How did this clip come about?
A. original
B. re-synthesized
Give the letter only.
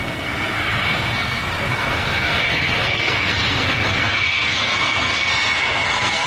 B